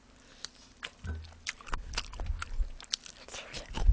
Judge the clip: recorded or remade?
recorded